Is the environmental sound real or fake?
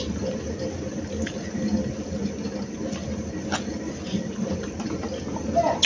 real